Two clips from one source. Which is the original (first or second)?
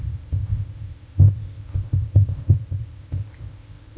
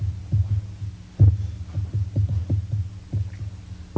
second